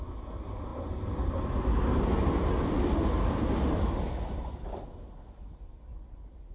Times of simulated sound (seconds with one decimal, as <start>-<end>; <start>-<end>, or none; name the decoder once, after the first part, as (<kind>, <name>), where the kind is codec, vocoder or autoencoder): none